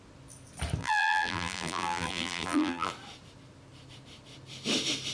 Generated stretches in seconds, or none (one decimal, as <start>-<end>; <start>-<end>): 0.8-2.9